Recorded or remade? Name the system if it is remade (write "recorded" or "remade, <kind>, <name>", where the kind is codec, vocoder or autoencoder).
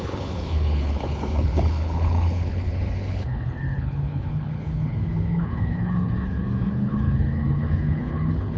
remade, codec, HILCodec